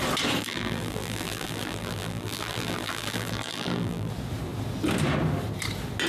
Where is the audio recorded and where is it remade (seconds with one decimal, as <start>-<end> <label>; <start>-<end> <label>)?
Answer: 0.0-0.4 recorded; 0.4-4.1 remade; 4.1-6.1 recorded